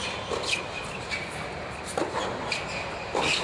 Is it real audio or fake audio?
real